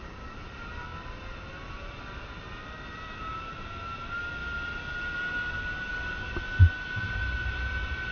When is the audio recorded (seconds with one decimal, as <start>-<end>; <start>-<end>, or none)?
0.0-8.1